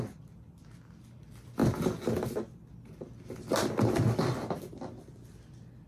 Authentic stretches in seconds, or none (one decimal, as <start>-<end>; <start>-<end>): 0.0-5.9

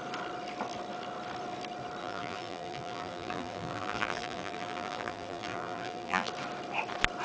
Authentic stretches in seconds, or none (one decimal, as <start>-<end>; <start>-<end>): 0.0-2.0; 6.3-7.2

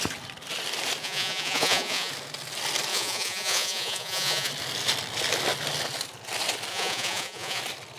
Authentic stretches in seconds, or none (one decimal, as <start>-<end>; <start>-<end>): 0.0-1.0; 2.1-2.9; 4.5-6.7; 7.6-8.0

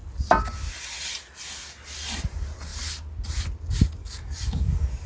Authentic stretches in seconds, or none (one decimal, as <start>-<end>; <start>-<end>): 0.0-4.0

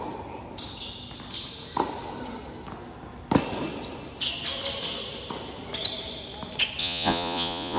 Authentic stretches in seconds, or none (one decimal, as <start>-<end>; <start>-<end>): 0.0-6.8

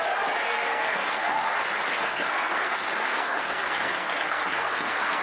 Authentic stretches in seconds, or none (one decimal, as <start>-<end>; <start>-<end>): 0.0-0.4; 1.6-2.0

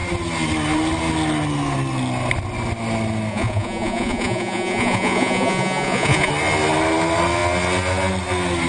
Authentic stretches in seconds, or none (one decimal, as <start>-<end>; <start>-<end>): 0.0-3.3; 6.3-8.7